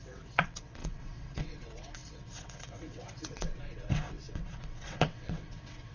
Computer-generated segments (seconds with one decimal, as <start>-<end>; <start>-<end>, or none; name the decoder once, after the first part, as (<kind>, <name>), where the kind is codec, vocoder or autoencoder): 0.0-5.9 (vocoder, WaveNeXt)